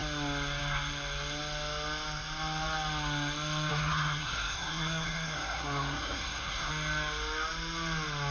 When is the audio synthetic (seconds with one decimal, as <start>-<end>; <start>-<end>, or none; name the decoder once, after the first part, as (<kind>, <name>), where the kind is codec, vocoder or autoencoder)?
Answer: 3.7-6.7 (codec, SNAC)